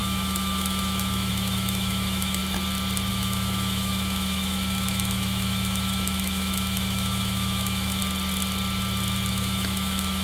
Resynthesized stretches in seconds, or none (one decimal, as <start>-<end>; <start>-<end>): 0.0-2.4; 3.1-8.0; 9.3-10.2